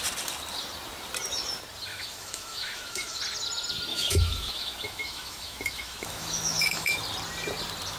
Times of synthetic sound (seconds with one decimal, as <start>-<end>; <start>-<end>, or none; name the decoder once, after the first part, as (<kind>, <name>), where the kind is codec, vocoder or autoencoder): 1.9-3.2 (autoencoder, DAC-VAE); 3.9-7.0